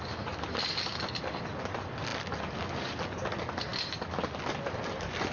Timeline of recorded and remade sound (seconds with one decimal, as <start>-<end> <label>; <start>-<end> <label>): 0.0-5.3 recorded